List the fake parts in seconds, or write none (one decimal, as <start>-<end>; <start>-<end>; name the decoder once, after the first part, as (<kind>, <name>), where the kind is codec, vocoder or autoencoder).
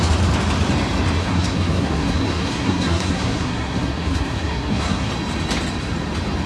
1.2-5.1 (codec, SNAC)